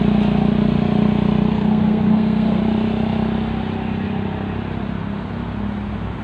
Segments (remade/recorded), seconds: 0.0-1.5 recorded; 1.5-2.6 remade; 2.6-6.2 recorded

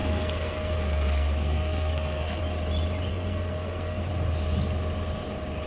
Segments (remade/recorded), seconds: 0.0-2.4 remade; 2.4-3.1 recorded; 3.1-4.1 remade; 4.1-5.7 recorded